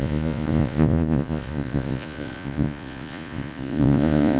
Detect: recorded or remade remade